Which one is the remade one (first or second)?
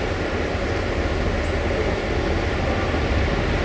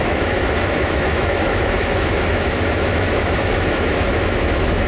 second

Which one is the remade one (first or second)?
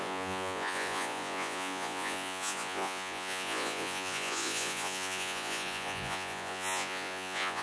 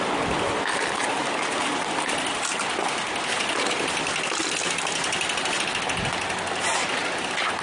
first